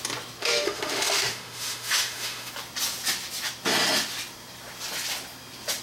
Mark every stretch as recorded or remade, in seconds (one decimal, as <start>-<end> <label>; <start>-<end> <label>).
0.0-0.4 recorded; 0.4-2.5 remade; 2.5-5.8 recorded